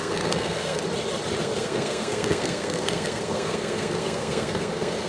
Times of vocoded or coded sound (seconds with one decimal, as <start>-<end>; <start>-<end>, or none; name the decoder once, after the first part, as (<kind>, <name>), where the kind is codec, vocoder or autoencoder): 0.0-0.8 (codec, SNAC); 1.4-5.1

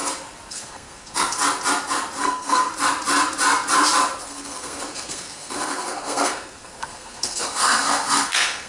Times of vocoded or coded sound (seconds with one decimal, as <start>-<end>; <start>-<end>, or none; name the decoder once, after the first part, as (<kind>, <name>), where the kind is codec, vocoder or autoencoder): 0.5-1.4 (codec, SNAC); 2.2-2.7; 4.2-8.7